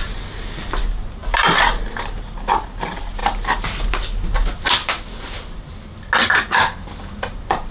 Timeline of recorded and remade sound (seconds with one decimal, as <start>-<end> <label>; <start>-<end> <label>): 0.0-1.2 recorded; 1.2-2.1 remade; 2.1-4.8 recorded; 4.8-6.1 remade; 6.1-7.7 recorded